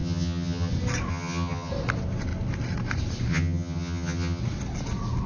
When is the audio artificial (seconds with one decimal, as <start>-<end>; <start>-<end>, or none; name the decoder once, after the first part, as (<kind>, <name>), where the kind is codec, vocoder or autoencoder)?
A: 0.0-0.7 (vocoder, HiFi-GAN); 1.1-1.7; 3.3-4.4